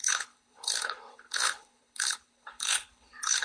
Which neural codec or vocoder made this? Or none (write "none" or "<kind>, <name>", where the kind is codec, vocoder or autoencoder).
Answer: codec, HILCodec